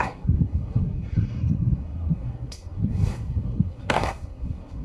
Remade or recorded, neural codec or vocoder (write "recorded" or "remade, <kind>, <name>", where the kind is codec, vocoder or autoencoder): remade, codec, SNAC